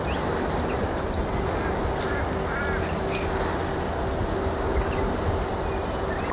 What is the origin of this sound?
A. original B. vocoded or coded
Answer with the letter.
A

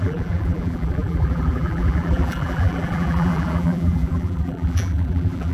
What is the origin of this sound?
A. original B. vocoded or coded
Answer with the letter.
B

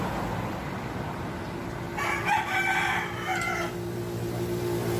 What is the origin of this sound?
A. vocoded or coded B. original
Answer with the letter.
B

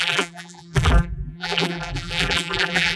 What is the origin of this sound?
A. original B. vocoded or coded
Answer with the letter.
B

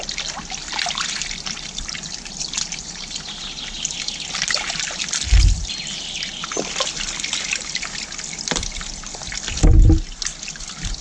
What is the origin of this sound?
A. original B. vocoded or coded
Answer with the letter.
A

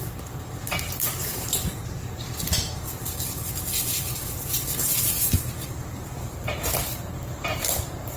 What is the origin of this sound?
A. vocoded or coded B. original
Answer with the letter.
A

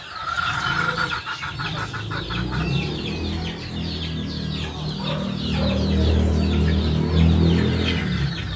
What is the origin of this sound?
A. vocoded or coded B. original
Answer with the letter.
B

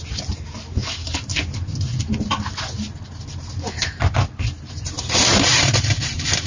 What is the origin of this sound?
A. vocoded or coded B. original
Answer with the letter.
B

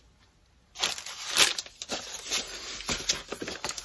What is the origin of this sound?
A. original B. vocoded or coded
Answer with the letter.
A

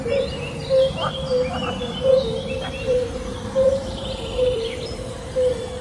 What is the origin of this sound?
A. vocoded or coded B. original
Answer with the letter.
A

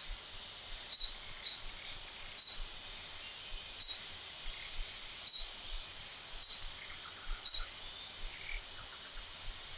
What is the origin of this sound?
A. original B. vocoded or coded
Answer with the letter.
A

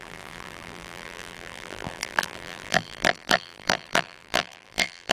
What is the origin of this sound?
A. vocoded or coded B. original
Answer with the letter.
A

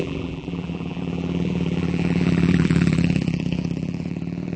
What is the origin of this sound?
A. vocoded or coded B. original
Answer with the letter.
A